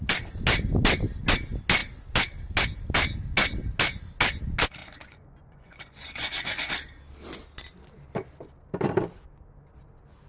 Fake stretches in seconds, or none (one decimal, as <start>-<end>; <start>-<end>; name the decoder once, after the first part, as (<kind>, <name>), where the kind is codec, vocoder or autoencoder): 4.8-6.7 (vocoder, Vocos)